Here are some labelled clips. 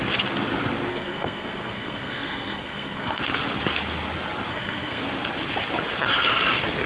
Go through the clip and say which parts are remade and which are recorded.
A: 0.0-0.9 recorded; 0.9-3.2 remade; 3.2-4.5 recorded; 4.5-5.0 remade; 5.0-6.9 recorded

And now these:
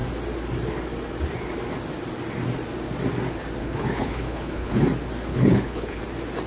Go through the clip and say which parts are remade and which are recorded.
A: 0.0-3.6 recorded; 3.6-4.8 remade; 4.8-5.3 recorded; 5.3-6.0 remade; 6.0-6.5 recorded

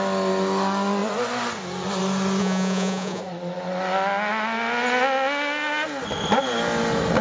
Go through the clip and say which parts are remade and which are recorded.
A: 0.0-2.4 recorded; 2.4-3.2 remade; 3.2-7.2 recorded

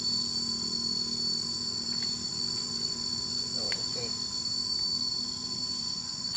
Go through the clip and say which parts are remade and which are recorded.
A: 0.0-2.3 recorded; 2.3-4.0 remade; 4.0-5.8 recorded; 5.8-6.4 remade

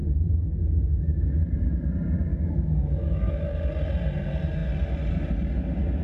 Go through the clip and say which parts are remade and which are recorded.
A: 0.0-1.0 remade; 1.0-2.3 recorded; 2.3-3.4 remade; 3.4-6.0 recorded

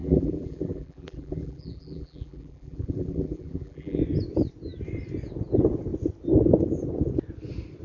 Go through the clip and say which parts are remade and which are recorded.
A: 0.0-4.0 remade; 4.0-7.8 recorded